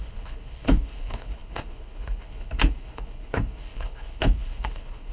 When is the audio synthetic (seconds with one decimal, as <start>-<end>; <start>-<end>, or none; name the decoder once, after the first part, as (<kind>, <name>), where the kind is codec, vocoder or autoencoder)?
0.0-5.1 (codec, HILCodec)